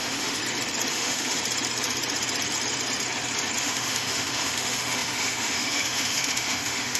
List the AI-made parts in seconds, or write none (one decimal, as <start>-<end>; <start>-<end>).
0.0-0.4; 0.9-1.4; 3.6-7.0